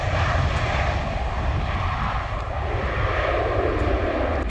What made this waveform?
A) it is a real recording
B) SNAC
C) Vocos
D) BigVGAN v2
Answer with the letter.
A